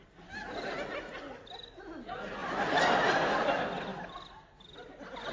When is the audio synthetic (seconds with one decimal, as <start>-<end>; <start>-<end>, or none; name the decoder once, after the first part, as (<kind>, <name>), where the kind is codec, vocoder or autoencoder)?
none